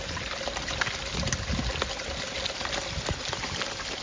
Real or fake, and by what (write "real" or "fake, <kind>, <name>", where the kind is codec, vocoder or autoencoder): real